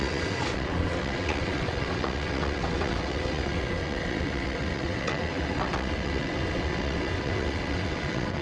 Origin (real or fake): fake